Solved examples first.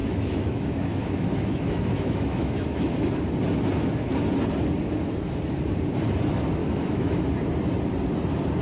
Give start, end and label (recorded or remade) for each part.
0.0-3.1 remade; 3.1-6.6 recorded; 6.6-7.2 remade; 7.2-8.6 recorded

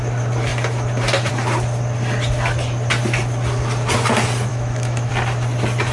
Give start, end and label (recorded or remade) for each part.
0.0-4.5 recorded; 4.5-5.1 remade; 5.1-5.9 recorded